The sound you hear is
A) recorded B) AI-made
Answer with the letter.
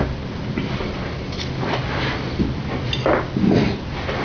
A